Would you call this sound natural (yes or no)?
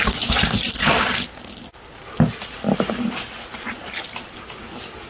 yes